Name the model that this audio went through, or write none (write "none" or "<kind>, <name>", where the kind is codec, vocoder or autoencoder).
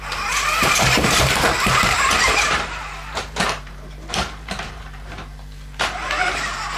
vocoder, BigVGAN v2